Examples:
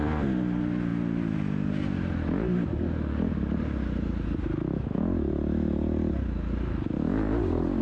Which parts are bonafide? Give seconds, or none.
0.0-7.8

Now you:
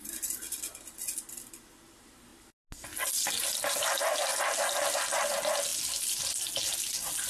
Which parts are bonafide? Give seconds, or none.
0.0-7.3